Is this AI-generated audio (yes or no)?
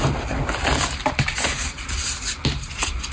no